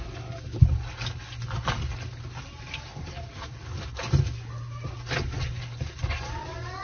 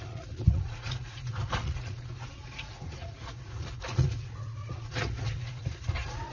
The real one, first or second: first